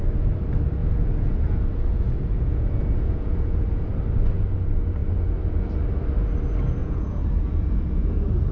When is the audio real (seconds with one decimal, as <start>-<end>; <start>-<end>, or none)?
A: 0.0-0.8; 3.9-6.8